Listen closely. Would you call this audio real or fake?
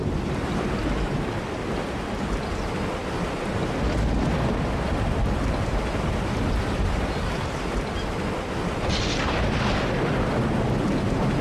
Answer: real